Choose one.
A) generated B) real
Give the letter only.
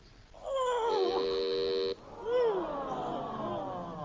B